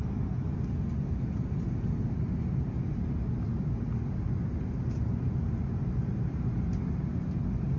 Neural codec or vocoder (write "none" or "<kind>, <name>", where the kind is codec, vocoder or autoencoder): none